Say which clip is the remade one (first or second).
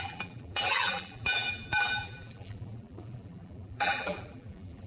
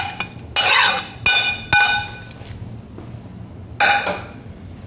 first